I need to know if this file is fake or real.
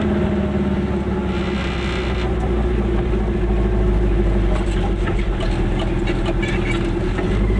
real